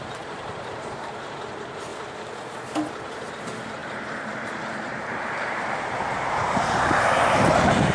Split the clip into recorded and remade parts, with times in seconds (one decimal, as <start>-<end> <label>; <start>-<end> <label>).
0.0-1.9 remade; 1.9-3.4 recorded; 3.4-7.9 remade